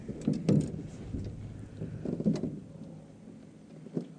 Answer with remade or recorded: recorded